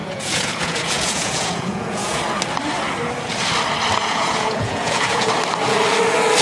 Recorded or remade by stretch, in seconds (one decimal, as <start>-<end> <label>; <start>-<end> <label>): 0.0-2.2 remade; 2.2-4.0 recorded; 4.0-5.3 remade; 5.3-6.4 recorded